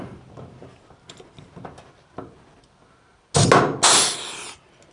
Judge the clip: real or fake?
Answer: real